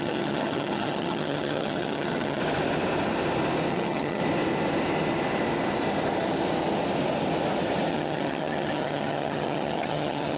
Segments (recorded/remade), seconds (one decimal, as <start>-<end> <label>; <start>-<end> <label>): 0.0-2.4 remade; 2.4-3.7 recorded; 3.7-4.2 remade; 4.2-7.9 recorded; 7.9-10.4 remade